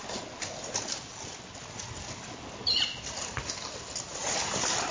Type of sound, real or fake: real